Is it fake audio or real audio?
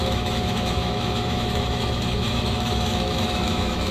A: fake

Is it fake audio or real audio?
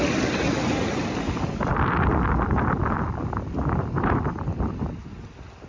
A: real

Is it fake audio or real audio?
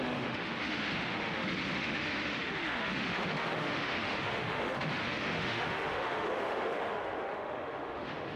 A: fake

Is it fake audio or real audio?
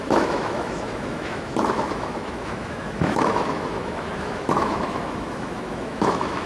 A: fake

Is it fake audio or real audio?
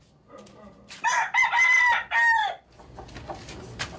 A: real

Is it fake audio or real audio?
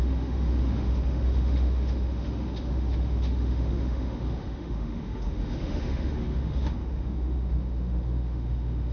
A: fake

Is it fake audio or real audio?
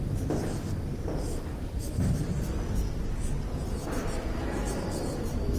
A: real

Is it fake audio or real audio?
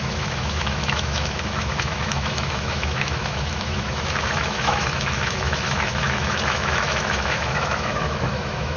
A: fake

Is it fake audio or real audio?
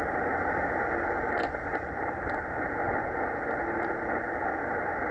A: real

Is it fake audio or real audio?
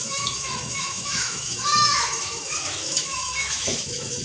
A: fake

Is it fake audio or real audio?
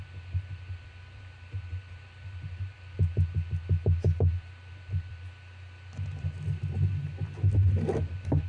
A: real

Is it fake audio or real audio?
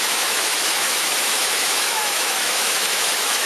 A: fake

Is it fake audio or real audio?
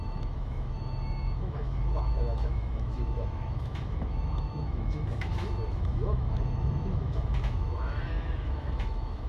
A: fake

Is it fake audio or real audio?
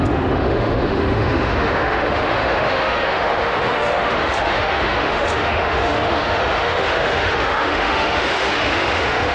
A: fake